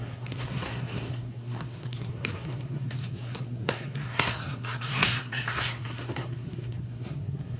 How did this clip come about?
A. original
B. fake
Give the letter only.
B